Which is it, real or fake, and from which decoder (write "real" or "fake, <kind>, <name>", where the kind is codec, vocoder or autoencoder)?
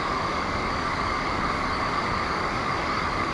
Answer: fake, codec, DAC